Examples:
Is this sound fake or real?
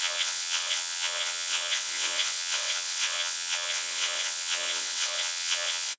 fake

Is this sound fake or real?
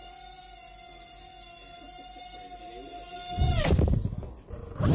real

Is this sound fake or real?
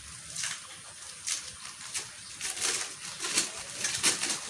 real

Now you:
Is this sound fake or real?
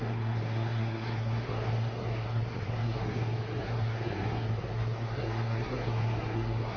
fake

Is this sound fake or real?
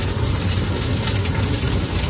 real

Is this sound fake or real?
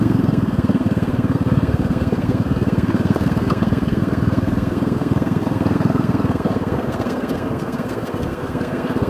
fake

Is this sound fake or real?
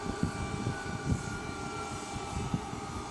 real